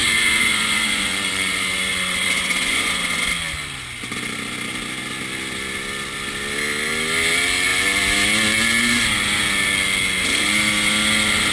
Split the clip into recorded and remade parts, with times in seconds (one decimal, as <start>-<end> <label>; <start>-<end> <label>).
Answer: 0.0-3.3 remade; 3.3-11.5 recorded